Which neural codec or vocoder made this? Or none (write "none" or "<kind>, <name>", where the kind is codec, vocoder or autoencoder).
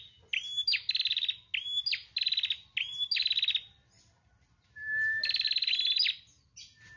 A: none